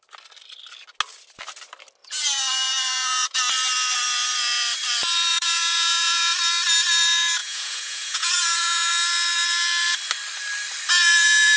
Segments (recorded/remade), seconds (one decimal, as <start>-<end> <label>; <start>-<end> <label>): 0.0-2.0 recorded; 2.0-3.4 remade; 3.4-5.3 recorded; 5.3-6.3 remade; 6.3-7.4 recorded; 7.4-8.9 remade; 8.9-11.6 recorded